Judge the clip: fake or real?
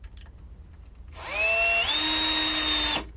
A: real